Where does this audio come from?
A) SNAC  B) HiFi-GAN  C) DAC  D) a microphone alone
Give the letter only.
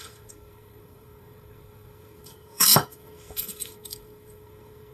A